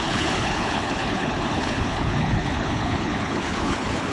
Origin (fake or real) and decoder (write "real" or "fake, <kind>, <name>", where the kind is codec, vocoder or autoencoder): fake, codec, HILCodec